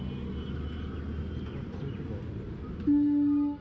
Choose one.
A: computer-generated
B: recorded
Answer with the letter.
B